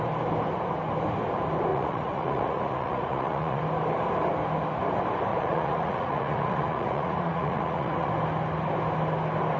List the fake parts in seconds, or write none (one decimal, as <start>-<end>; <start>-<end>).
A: 1.7-3.6; 5.3-8.1